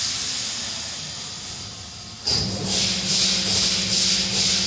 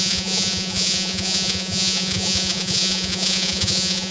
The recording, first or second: first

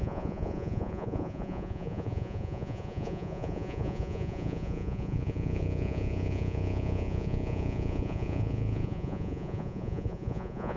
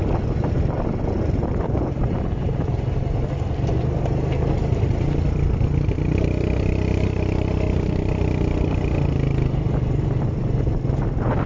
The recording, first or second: second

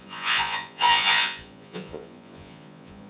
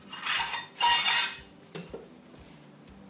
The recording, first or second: second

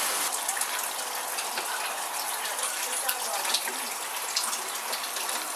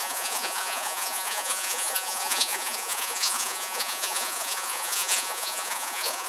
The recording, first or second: first